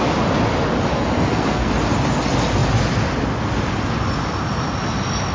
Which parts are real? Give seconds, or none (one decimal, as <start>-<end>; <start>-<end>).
0.0-0.9; 1.7-5.3